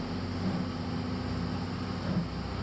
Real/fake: real